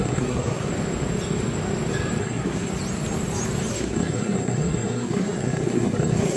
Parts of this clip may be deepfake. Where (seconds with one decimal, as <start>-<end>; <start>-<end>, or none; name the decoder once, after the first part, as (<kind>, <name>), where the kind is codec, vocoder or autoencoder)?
0.0-0.7 (codec, SNAC); 2.2-2.7; 3.7-6.4